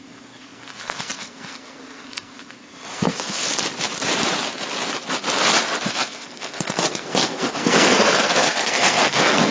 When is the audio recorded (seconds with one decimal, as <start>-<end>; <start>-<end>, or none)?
3.4-5.9